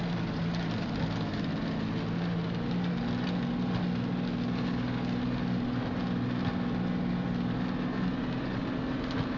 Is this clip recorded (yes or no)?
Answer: yes